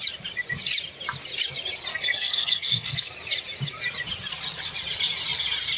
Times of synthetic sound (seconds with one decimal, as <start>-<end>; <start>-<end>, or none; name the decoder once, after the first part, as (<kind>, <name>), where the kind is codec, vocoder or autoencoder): 1.9-3.1 (codec, SNAC)